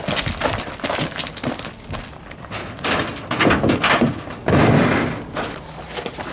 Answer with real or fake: real